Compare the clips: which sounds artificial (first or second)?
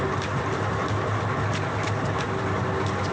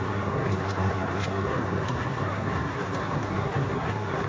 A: second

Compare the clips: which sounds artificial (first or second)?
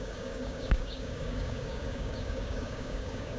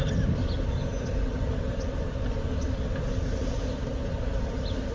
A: first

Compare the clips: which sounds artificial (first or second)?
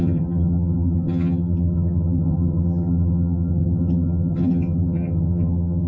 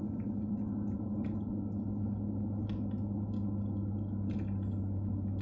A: first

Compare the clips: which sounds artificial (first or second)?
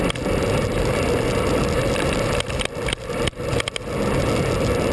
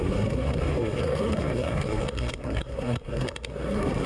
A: second